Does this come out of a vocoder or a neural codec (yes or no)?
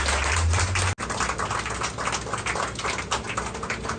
no